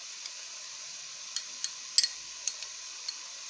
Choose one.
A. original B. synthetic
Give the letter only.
A